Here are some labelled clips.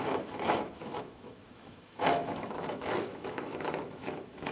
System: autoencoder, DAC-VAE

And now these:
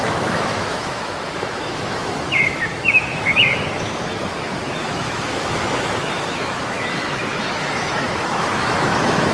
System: autoencoder, DAC-VAE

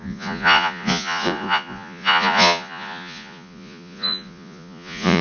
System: vocoder, Vocos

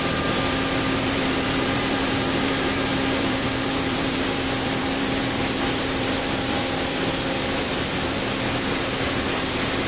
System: vocoder, BigVGAN v2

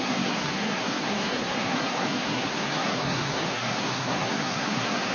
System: codec, SNAC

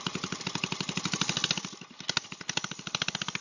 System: none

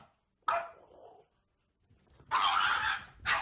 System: none